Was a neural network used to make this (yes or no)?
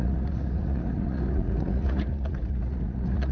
yes